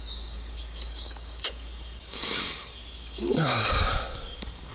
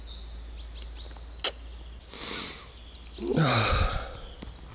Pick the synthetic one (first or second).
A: first